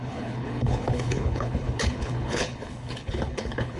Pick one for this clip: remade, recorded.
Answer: remade